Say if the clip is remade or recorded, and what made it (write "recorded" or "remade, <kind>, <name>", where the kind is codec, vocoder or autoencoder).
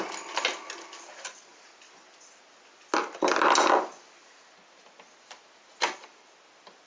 recorded